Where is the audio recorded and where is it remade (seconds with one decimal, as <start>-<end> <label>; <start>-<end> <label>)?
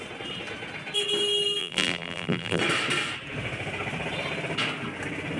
0.0-1.6 recorded; 1.6-2.6 remade; 2.6-5.4 recorded